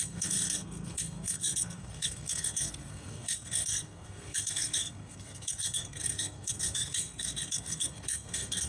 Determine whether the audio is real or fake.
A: fake